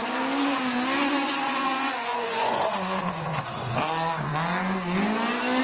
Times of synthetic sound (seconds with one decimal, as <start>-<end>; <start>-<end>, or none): 1.0-3.7